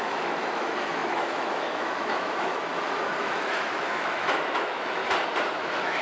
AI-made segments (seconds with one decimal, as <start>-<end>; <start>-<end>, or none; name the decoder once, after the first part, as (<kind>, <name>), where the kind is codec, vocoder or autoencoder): 0.0-2.7 (autoencoder, DAC-VAE); 3.2-5.0; 5.5-6.0